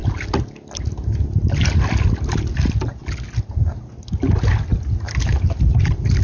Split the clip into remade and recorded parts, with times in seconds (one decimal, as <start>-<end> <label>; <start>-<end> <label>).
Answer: 0.0-6.2 recorded